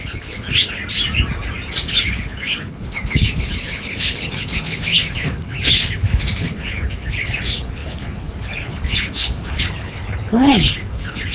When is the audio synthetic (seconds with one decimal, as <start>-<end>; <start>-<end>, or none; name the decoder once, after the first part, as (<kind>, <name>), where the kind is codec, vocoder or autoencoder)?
0.0-0.8 (codec, HILCodec); 1.9-11.3